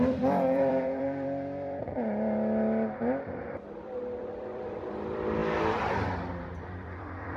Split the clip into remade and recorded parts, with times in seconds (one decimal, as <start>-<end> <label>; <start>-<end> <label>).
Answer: 0.0-5.4 remade; 5.4-6.6 recorded; 6.6-7.4 remade